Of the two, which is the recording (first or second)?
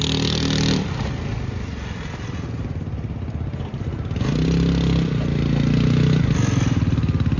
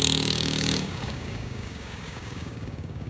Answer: first